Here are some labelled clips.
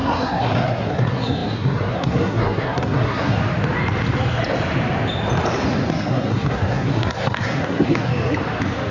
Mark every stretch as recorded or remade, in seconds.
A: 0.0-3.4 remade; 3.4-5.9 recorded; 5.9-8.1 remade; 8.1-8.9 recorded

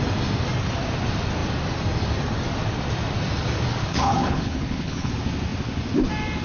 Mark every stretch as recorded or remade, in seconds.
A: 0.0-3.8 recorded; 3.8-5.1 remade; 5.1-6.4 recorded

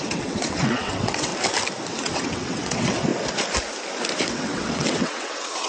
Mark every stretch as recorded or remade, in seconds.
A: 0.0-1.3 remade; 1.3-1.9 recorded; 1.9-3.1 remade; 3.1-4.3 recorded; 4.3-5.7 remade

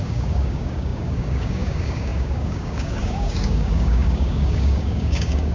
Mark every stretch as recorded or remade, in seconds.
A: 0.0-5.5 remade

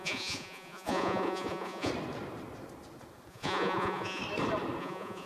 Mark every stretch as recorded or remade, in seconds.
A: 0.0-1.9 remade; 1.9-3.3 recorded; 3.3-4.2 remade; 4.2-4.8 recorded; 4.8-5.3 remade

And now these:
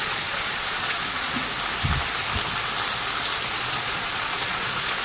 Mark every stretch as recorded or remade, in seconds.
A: 0.0-1.4 remade; 1.4-3.6 recorded; 3.6-5.0 remade

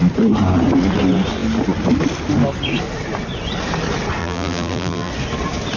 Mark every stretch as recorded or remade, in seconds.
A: 0.0-4.2 recorded; 4.2-5.1 remade; 5.1-5.8 recorded